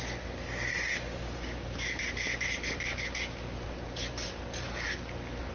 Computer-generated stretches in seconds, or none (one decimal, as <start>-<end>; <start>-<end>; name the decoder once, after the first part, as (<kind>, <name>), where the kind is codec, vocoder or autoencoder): 0.7-2.0 (codec, DAC)

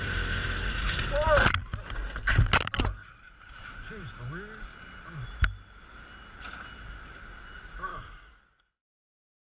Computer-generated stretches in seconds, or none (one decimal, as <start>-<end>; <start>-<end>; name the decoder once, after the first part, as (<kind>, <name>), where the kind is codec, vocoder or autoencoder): 7.9-8.4 (codec, DAC)

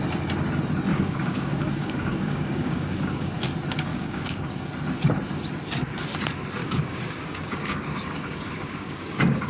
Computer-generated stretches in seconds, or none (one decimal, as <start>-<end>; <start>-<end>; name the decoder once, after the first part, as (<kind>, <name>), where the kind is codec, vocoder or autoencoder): 0.9-3.3 (codec, DAC); 3.9-4.5; 6.6-9.5

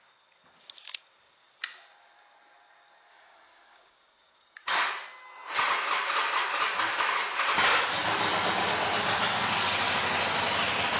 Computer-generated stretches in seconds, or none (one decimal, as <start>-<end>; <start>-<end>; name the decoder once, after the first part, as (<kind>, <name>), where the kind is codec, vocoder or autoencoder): 3.1-4.7 (codec, DAC)

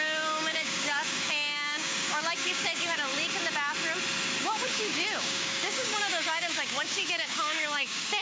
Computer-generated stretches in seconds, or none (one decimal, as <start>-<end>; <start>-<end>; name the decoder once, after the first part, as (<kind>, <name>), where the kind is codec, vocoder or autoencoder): 0.0-3.1 (codec, DAC); 4.4-8.2

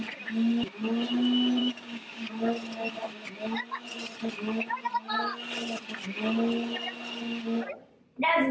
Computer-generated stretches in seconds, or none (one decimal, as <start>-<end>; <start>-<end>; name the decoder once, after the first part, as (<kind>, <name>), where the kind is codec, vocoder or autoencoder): 1.6-2.3 (codec, DAC)